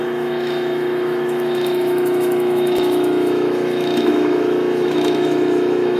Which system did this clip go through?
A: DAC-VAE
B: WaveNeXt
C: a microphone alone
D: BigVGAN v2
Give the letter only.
A